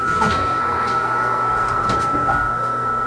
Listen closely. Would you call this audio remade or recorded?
remade